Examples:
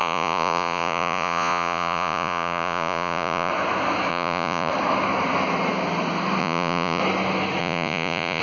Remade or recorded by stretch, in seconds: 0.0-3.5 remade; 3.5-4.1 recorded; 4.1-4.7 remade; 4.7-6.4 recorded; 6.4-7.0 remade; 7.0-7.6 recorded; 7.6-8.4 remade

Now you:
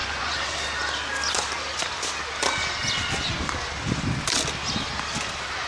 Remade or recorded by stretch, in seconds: 0.0-0.5 remade; 0.5-5.7 recorded

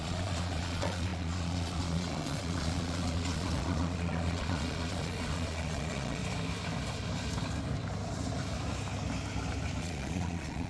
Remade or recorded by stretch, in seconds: 0.0-6.2 remade; 6.2-9.8 recorded; 9.8-10.7 remade

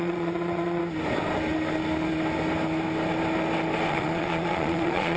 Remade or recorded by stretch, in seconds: 0.0-0.8 remade; 0.8-3.9 recorded; 3.9-5.2 remade

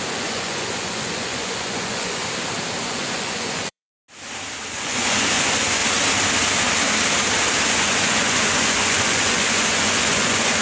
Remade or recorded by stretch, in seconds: 0.0-2.2 remade; 2.2-2.8 recorded; 2.8-3.9 remade; 3.9-4.7 recorded; 4.7-5.8 remade; 5.8-7.7 recorded; 7.7-10.6 remade

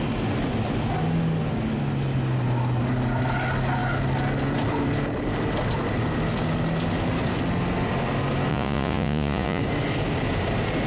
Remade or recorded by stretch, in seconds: 0.0-8.5 recorded; 8.5-9.6 remade; 9.6-10.9 recorded

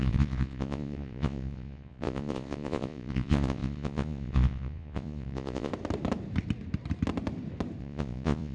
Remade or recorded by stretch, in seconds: 0.0-5.7 remade; 5.7-7.8 recorded; 7.8-8.5 remade

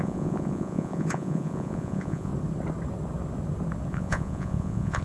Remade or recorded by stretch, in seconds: 0.0-2.3 remade; 2.3-3.9 recorded; 3.9-5.0 remade